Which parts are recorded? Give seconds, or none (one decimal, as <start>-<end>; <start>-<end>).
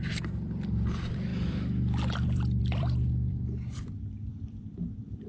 none